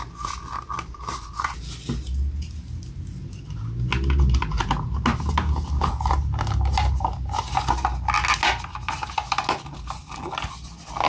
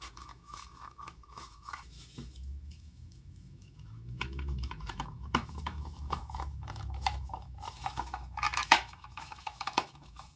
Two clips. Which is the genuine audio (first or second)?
first